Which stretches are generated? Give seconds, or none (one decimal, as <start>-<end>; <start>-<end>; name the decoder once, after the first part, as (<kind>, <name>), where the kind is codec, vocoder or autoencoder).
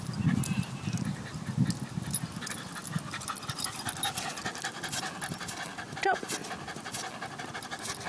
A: none